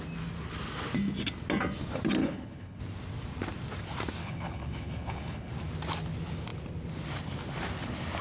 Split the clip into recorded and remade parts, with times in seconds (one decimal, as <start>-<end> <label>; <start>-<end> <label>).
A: 0.0-2.2 recorded; 2.2-2.8 remade; 2.8-4.2 recorded; 4.2-5.5 remade; 5.5-8.2 recorded